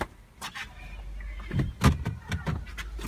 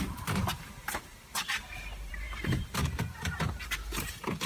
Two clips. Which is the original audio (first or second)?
first